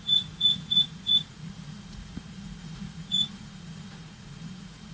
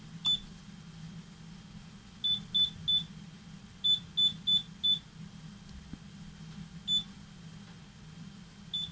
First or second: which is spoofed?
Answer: first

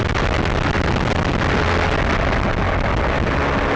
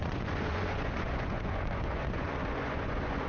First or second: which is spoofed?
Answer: second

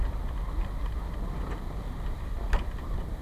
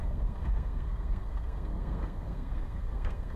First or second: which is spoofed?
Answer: second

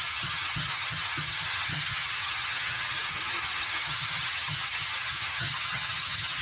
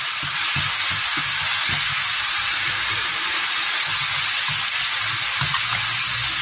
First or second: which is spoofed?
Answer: first